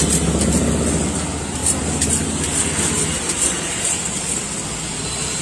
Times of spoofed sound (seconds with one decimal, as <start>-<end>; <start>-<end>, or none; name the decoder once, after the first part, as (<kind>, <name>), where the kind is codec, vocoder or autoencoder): none